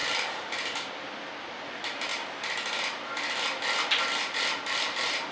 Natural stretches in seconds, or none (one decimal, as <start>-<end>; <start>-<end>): 0.0-5.3